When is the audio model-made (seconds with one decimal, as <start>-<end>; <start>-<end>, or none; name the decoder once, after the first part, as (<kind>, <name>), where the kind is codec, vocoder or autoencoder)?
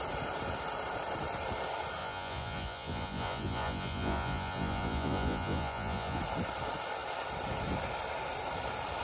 2.0-6.2 (vocoder, Vocos)